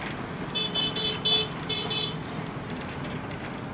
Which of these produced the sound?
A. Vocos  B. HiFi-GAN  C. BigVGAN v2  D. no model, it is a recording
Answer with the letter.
D